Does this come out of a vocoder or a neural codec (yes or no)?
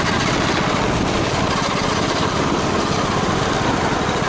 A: no